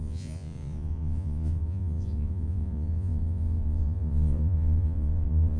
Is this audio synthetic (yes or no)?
yes